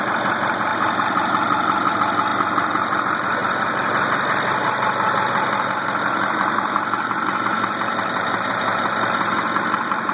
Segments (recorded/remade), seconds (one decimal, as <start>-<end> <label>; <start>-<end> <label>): 0.0-10.1 remade